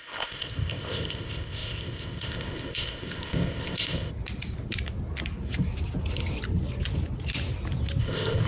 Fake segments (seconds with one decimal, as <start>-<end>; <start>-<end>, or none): 0.0-4.1; 8.0-8.5